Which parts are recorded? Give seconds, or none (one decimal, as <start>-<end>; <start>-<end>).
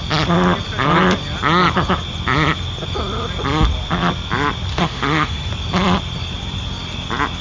0.0-4.7; 5.5-7.4